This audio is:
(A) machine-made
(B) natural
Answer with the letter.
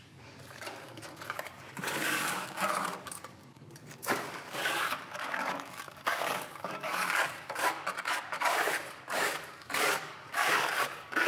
A